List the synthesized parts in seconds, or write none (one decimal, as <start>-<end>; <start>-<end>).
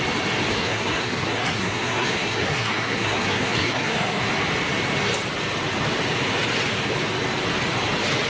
0.5-4.2